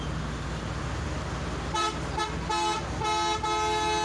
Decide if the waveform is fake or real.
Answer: real